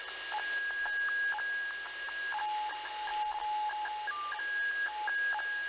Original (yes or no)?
yes